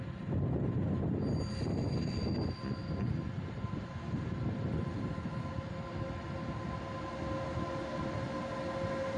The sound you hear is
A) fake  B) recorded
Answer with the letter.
B